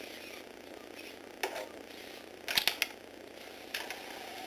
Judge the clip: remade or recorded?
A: recorded